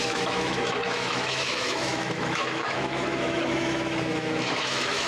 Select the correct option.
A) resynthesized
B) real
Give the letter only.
A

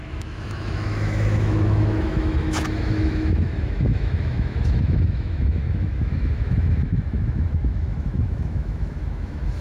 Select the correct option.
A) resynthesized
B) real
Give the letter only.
A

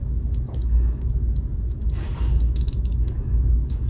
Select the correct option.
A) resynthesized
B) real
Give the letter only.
A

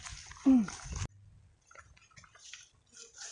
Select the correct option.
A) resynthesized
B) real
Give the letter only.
B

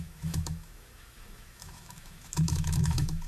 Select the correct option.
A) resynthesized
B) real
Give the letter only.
A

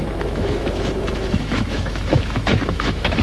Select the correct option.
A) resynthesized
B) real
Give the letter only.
A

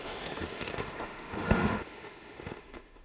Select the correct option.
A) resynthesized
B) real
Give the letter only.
A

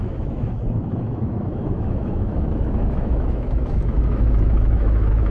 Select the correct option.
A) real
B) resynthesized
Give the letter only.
B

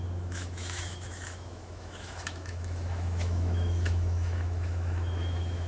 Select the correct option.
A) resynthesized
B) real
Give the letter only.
A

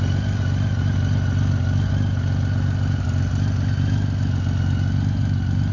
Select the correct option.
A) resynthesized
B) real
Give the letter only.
B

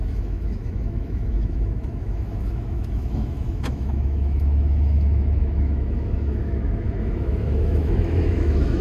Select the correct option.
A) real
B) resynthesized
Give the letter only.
B